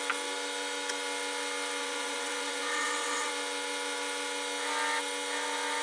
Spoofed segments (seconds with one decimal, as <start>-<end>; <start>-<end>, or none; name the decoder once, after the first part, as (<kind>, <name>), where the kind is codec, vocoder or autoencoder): 1.8-3.3 (vocoder, WaveNeXt)